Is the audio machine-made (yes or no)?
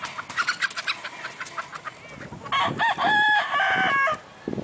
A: no